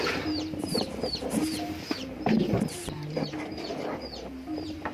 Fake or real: fake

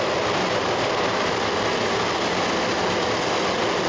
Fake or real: real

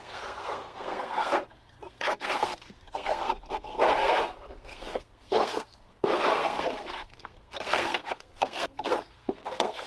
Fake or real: fake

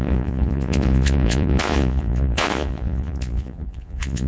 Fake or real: fake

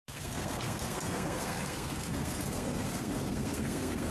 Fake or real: fake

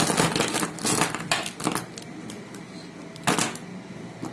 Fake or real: real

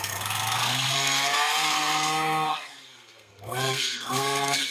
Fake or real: fake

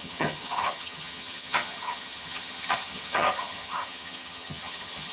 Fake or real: fake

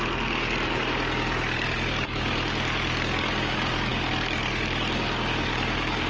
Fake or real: fake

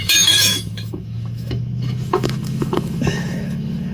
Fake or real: fake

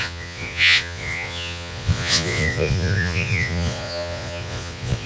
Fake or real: fake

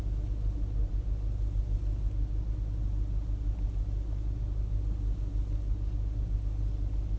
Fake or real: real